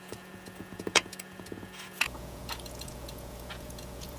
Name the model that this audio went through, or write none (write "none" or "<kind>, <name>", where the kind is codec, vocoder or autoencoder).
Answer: vocoder, Vocos